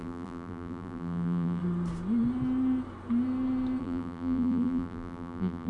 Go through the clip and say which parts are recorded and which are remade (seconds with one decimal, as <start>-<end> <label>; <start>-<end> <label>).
0.0-1.6 remade; 1.6-3.8 recorded; 3.8-5.7 remade